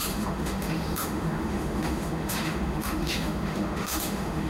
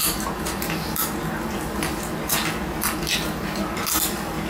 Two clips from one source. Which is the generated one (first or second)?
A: first